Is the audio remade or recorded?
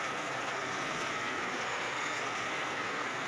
remade